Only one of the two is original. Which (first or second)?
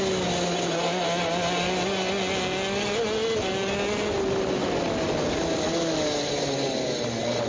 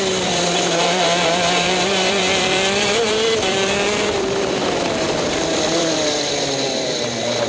first